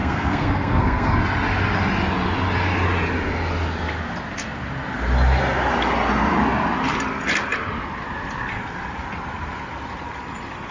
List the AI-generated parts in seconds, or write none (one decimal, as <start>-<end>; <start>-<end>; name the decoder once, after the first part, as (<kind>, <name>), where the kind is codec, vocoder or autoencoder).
0.0-1.2 (codec, SNAC)